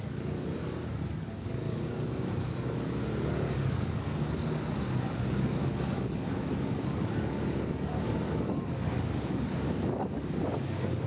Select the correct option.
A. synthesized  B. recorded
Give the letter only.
A